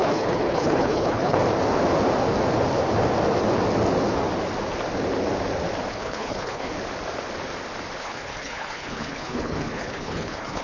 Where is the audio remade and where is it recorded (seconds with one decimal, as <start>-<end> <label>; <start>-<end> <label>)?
0.0-1.4 remade; 1.4-5.9 recorded; 5.9-6.7 remade; 6.7-8.0 recorded; 8.0-10.6 remade